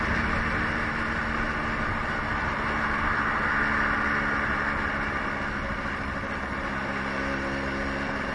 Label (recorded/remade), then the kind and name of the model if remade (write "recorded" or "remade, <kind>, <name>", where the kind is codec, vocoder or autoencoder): recorded